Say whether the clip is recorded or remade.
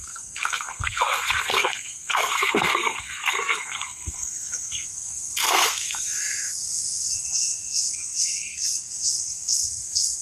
remade